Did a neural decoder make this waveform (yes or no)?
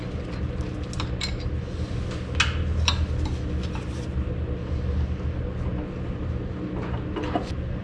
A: no